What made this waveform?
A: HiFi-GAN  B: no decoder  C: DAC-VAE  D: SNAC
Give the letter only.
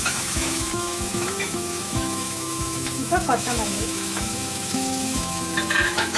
C